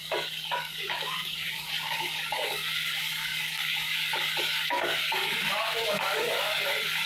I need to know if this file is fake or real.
fake